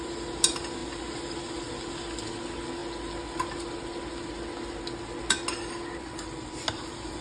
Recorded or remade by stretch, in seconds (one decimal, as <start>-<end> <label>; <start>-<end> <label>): 0.0-7.2 recorded